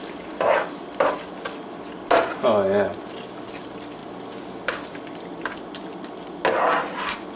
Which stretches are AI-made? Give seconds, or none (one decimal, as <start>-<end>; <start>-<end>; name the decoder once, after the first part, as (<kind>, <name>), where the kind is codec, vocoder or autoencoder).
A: none